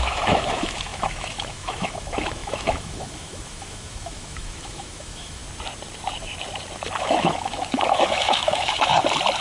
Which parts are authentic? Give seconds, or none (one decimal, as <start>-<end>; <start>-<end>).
5.4-7.0; 8.9-9.4